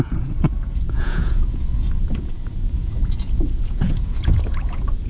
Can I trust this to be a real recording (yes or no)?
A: no